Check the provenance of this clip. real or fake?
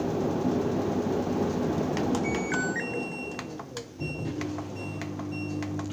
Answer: real